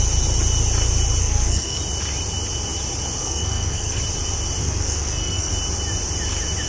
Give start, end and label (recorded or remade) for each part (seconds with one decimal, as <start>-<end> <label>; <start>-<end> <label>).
0.0-1.2 recorded; 1.2-1.8 remade; 1.8-3.2 recorded; 3.2-4.0 remade; 4.0-4.6 recorded; 4.6-5.5 remade; 5.5-6.7 recorded